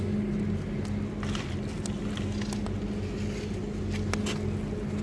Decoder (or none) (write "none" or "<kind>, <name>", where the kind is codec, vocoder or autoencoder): none